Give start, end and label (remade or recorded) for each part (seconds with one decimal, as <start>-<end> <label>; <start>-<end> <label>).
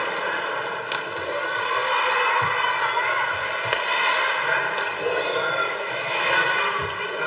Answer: 0.0-5.6 recorded; 5.6-6.8 remade; 6.8-7.3 recorded